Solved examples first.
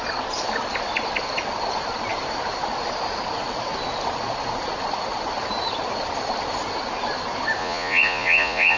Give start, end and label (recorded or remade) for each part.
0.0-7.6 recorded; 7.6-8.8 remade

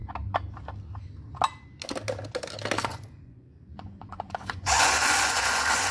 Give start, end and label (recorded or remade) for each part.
0.0-2.9 recorded; 2.9-5.9 remade